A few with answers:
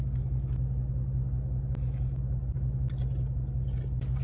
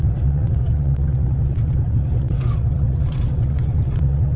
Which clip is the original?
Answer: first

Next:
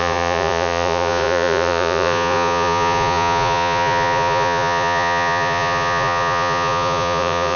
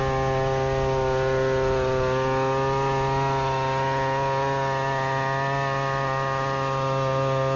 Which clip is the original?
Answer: second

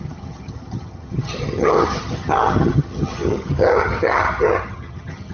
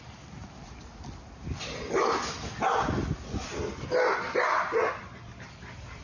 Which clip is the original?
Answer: second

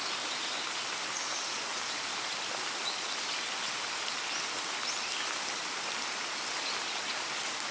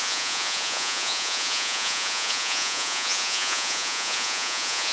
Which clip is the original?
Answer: first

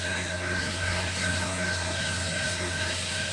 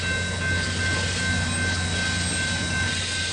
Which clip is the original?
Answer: second